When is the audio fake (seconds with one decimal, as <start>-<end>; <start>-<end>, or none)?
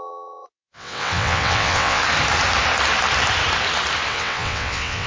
0.0-2.0; 4.1-5.1